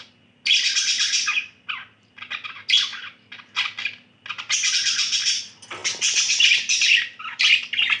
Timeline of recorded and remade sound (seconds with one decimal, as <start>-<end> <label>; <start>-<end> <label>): 0.0-1.3 recorded; 1.3-2.1 remade; 2.1-5.8 recorded; 5.8-7.5 remade; 7.5-8.0 recorded